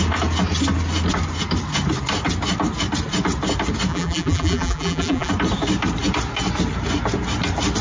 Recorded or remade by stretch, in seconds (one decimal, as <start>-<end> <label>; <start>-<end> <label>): 0.0-3.9 recorded; 3.9-5.3 remade; 5.3-7.8 recorded